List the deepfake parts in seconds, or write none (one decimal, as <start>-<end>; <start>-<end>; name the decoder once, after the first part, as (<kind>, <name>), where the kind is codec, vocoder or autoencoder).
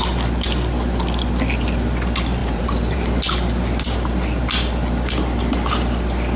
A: 2.4-3.2 (vocoder, BigVGAN v2)